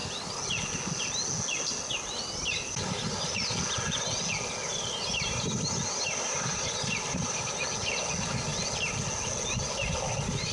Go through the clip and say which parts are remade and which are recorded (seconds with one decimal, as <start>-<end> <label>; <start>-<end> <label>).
0.0-4.7 recorded; 4.7-7.6 remade; 7.6-10.5 recorded